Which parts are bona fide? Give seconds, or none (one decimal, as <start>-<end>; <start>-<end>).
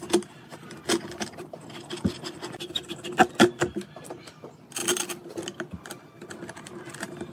0.0-0.5; 3.2-4.8; 5.4-7.3